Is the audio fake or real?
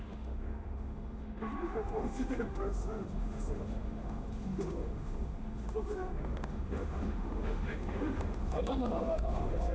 fake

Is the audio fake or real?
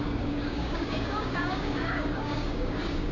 fake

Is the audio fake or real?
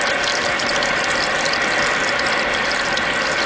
real